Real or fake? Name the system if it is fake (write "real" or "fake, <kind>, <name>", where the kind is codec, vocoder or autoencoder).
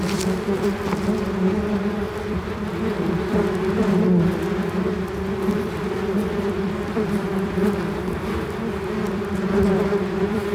fake, vocoder, BigVGAN v2